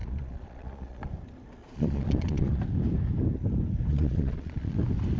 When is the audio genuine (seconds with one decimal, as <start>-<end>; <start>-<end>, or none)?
1.1-1.6; 2.6-3.9; 4.8-5.2